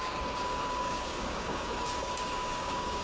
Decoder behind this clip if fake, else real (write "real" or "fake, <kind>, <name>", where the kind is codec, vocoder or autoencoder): fake, codec, DAC